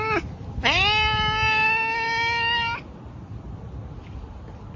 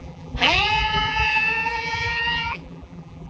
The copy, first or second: second